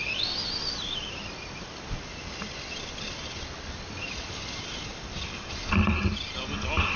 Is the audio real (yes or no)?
yes